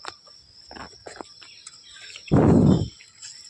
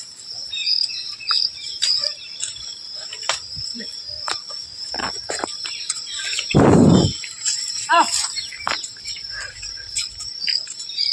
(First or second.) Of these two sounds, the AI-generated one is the second